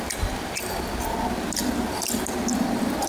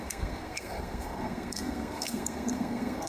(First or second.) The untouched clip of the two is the first